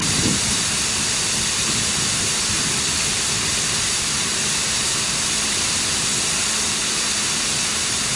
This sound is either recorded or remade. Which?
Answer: remade